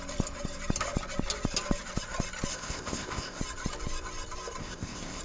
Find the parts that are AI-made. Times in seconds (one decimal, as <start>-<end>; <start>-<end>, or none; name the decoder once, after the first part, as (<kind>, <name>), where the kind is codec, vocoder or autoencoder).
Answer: 2.5-3.4 (codec, ZipCodec); 4.6-5.2